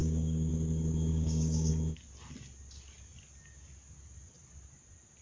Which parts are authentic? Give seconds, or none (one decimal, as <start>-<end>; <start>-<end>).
0.5-1.1; 1.7-5.2